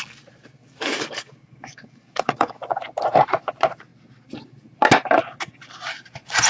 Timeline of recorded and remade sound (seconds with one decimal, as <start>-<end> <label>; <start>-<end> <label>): 0.0-0.6 recorded; 0.6-2.6 remade; 2.6-6.5 recorded